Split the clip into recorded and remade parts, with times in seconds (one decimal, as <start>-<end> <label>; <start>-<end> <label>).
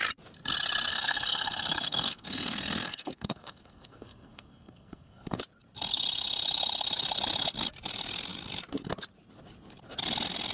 0.0-0.9 recorded; 0.9-5.4 remade; 5.4-10.5 recorded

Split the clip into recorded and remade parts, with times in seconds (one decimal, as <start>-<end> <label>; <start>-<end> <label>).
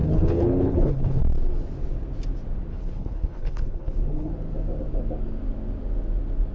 0.0-1.2 remade; 1.2-2.7 recorded; 2.7-4.3 remade; 4.3-6.5 recorded